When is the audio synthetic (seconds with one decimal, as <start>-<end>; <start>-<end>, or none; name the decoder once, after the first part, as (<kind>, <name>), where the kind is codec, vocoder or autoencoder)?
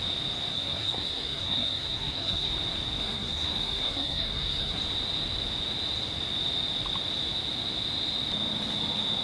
0.5-2.5 (codec, SNAC); 3.0-4.8